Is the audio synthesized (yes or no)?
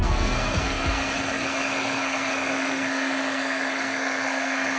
yes